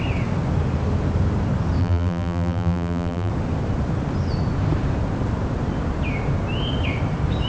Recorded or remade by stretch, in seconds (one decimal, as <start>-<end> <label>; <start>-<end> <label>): 0.0-1.8 recorded; 1.8-3.3 remade; 3.3-7.5 recorded